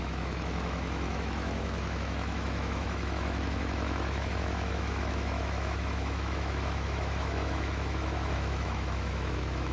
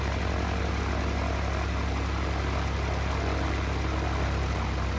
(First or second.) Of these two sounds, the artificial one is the first